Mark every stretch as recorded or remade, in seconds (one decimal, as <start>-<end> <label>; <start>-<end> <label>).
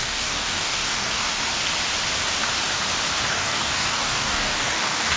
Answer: 0.0-1.3 remade; 1.3-3.3 recorded; 3.3-5.2 remade